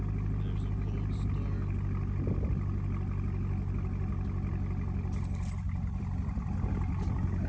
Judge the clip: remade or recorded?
recorded